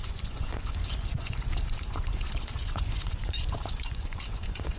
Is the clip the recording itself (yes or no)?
no